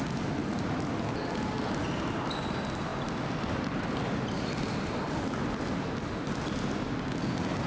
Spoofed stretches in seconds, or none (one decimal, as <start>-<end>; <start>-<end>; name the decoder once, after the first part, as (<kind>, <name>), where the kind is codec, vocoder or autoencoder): none